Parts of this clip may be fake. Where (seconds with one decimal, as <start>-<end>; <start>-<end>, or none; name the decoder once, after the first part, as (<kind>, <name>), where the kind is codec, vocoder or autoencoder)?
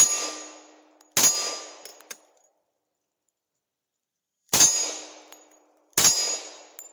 1.9-5.9 (vocoder, BigVGAN v2)